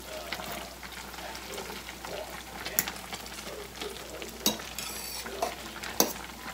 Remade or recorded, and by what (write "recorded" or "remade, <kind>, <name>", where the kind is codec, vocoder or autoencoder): recorded